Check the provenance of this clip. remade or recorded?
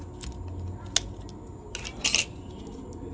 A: recorded